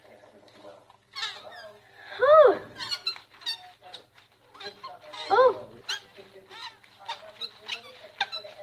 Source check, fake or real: real